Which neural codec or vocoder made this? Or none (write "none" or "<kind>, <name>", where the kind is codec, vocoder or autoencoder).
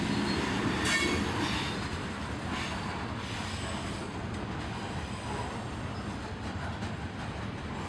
none